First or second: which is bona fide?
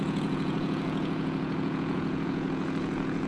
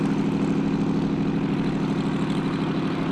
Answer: second